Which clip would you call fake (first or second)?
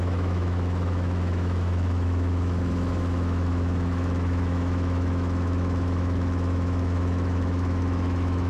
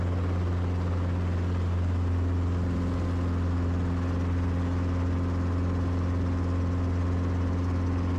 first